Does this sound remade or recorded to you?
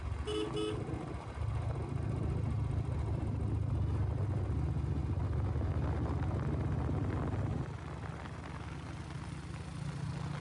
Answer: recorded